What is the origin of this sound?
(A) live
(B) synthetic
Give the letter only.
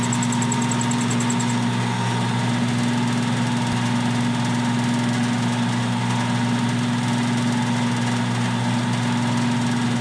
A